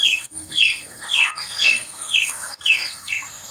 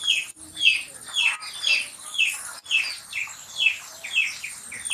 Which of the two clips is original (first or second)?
second